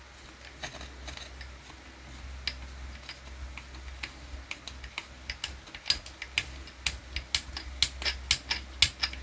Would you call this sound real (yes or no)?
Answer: yes